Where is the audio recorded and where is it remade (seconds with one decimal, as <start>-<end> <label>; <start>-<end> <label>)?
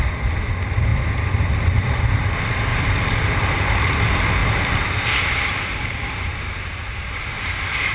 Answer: 0.0-0.9 recorded; 0.9-2.2 remade; 2.2-2.7 recorded; 2.7-3.3 remade; 3.3-4.4 recorded; 4.4-6.3 remade; 6.3-7.9 recorded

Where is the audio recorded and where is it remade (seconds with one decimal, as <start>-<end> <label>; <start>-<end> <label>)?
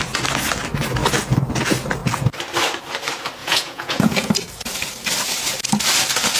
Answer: 0.0-3.4 recorded; 3.4-4.3 remade; 4.3-6.4 recorded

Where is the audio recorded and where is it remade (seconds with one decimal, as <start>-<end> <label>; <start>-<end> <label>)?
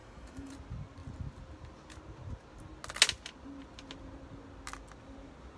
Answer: 0.0-0.5 remade; 0.5-5.6 recorded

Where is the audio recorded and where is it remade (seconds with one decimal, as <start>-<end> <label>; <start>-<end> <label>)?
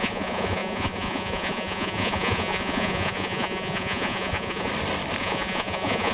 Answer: 0.0-4.7 remade; 4.7-5.2 recorded; 5.2-6.1 remade